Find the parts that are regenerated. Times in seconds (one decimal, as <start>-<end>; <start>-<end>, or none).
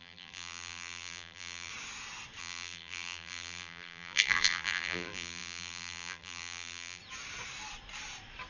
0.0-1.7; 2.4-7.0